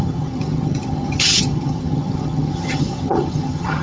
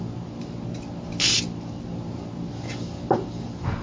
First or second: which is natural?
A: second